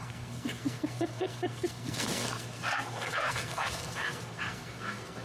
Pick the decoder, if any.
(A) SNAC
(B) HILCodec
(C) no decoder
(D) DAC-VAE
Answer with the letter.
A